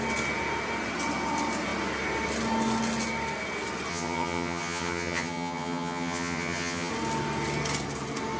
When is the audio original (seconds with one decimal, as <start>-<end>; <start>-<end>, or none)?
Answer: 0.0-3.9; 6.9-8.4